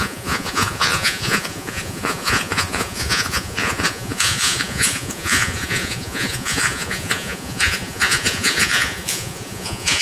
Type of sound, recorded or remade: remade